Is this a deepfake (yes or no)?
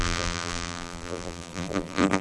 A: yes